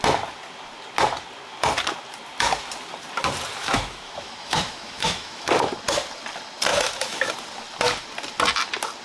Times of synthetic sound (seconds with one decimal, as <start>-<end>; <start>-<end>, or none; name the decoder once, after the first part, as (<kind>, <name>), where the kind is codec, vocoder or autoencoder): 3.6-5.7 (autoencoder, DAC-VAE); 6.7-7.3